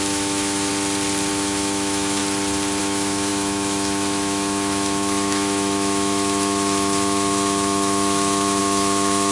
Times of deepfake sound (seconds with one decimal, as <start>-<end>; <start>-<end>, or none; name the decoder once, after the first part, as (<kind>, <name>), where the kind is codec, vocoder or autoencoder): 0.0-0.7 (autoencoder, DAC-VAE); 1.3-2.2; 2.8-9.3